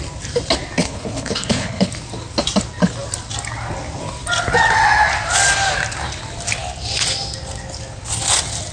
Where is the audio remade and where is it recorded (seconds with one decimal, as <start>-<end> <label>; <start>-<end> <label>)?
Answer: 0.0-0.8 recorded; 0.8-1.9 remade; 1.9-8.7 recorded